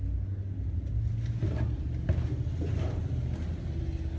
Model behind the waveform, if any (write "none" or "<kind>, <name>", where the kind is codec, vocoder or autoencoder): none